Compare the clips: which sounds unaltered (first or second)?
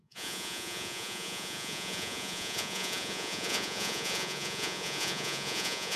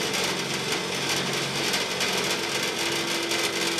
second